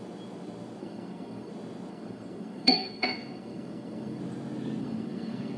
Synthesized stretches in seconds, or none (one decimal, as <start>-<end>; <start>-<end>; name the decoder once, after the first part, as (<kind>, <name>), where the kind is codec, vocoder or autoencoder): 0.8-1.5 (codec, SNAC); 1.9-4.2; 4.8-5.6